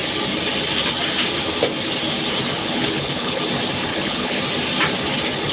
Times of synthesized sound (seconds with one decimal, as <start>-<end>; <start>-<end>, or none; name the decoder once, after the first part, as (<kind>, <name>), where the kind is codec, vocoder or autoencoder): 2.6-3.4 (codec, HILCodec); 3.9-4.4